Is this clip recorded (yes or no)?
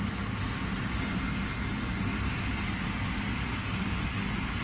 yes